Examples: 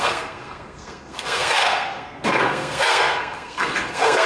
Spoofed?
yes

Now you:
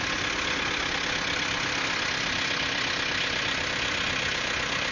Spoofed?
no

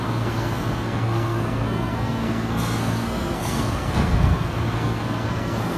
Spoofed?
yes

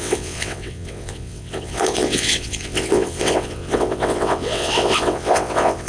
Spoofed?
yes